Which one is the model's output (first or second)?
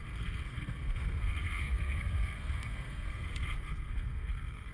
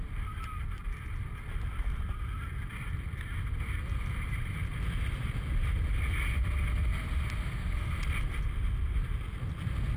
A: first